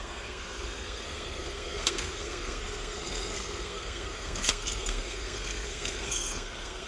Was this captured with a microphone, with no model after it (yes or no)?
no